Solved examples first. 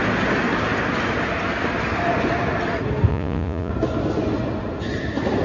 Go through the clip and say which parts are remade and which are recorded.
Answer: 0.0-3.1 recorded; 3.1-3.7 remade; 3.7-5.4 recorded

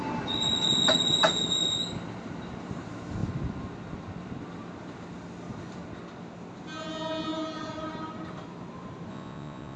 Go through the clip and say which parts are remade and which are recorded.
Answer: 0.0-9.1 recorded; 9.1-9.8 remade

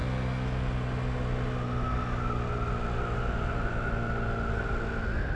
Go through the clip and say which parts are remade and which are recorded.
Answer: 0.0-5.3 recorded